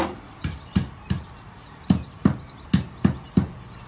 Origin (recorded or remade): recorded